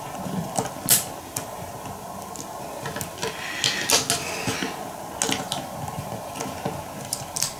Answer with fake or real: real